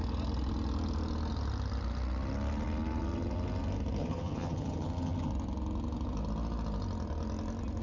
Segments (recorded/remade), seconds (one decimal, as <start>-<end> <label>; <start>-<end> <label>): 0.0-4.0 recorded; 4.0-5.3 remade; 5.3-7.8 recorded